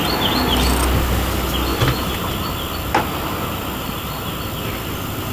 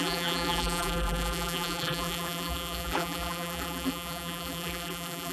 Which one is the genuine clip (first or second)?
first